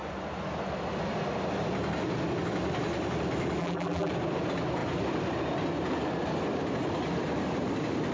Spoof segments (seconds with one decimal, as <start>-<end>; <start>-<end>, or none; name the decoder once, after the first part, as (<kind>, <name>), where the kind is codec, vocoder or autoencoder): 3.6-4.1 (vocoder, BigVGAN v2)